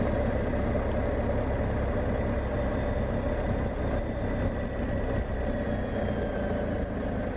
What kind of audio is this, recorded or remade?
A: recorded